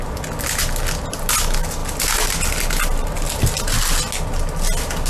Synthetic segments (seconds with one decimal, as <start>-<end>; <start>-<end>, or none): none